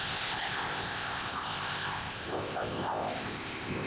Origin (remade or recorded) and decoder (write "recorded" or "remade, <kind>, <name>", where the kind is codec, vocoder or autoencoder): remade, codec, ZipCodec